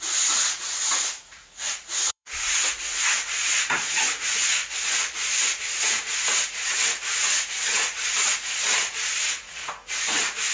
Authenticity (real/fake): fake